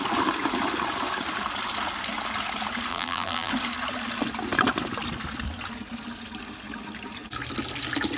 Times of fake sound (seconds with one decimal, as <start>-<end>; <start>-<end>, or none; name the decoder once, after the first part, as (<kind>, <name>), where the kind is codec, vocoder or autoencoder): 2.9-3.5 (vocoder, BigVGAN v2)